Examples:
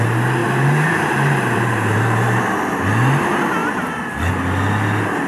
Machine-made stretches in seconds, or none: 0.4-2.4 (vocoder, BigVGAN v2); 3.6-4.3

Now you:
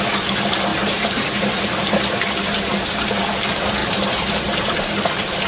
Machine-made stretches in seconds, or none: 0.7-1.5 (vocoder, BigVGAN v2); 3.8-5.0

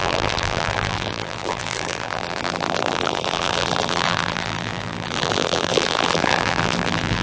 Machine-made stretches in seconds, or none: 0.0-7.2 (vocoder, BigVGAN v2)

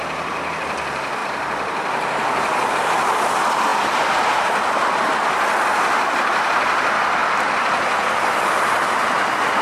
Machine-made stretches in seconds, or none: 1.2-2.7 (vocoder, BigVGAN v2)

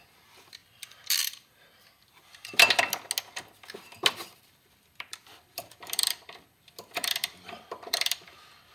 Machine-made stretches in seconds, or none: 0.6-2.8 (vocoder, BigVGAN v2); 4.5-8.7

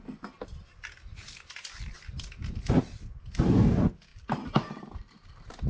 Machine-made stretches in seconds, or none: 4.1-5.7 (vocoder, BigVGAN v2)